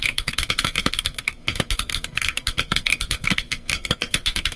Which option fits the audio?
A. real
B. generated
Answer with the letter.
B